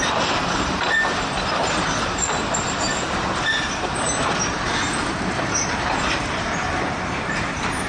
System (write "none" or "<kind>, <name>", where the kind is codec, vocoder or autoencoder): vocoder, BigVGAN v2